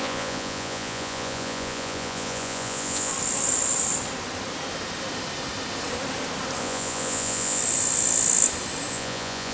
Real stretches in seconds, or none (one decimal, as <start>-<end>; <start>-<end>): 3.1-6.6; 7.6-8.9